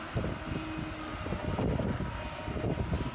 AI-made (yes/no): no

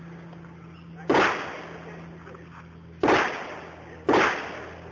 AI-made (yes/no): no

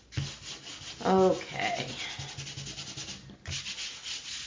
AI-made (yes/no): no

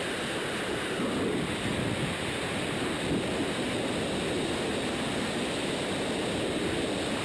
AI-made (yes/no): no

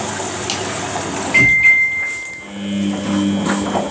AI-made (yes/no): no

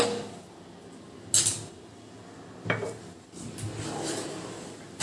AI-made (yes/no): no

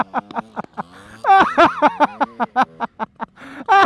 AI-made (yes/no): no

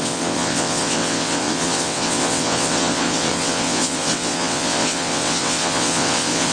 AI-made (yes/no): yes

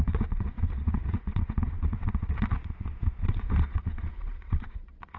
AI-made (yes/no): yes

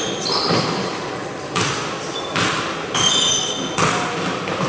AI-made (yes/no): no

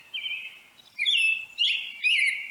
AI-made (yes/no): yes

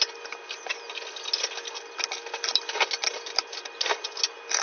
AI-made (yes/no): no